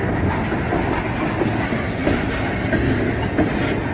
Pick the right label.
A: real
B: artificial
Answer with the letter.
A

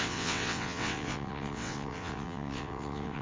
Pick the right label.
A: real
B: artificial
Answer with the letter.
B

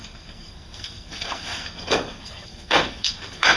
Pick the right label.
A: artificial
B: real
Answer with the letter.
A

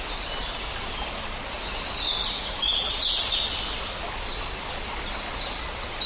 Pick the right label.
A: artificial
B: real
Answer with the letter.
B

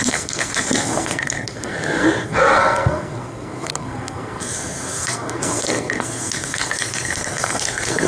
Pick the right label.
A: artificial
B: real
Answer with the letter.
A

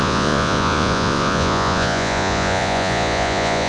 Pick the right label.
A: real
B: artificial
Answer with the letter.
B